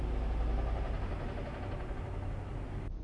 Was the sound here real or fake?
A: real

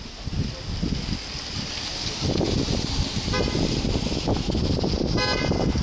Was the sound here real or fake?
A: real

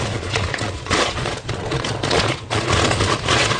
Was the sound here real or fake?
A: fake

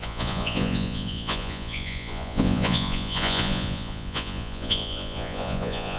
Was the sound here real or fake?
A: fake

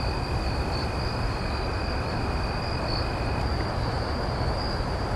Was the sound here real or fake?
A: real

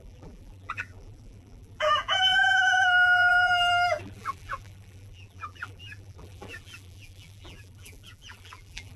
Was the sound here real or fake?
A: fake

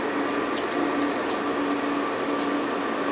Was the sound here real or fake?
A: real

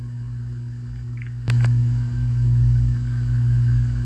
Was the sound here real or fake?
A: fake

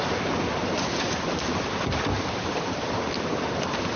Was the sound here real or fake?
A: real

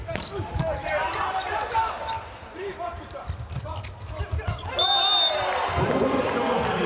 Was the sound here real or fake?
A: real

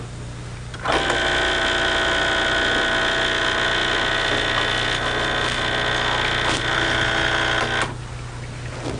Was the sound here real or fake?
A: real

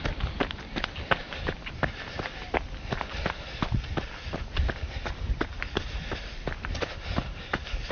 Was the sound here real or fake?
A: real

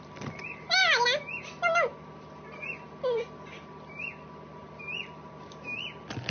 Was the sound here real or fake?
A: real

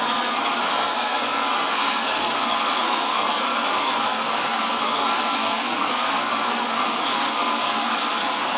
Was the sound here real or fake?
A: fake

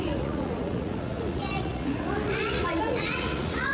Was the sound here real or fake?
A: fake